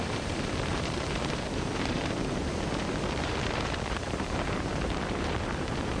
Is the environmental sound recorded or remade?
remade